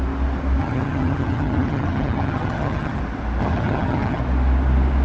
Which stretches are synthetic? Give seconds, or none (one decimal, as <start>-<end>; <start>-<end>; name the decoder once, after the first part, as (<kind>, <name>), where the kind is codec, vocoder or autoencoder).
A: 0.6-3.0 (vocoder, HiFi-GAN); 3.4-4.2